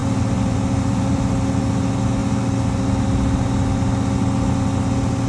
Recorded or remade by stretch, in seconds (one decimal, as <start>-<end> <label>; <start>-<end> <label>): 0.0-1.4 remade; 1.4-5.3 recorded